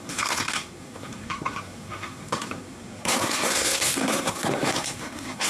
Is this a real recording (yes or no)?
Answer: no